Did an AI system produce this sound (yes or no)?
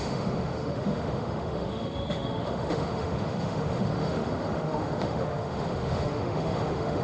yes